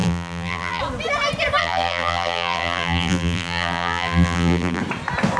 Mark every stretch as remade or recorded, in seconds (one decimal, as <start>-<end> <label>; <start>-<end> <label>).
0.0-0.8 remade; 0.8-1.6 recorded; 1.6-4.8 remade; 4.8-5.4 recorded